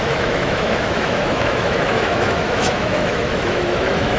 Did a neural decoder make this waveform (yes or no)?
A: yes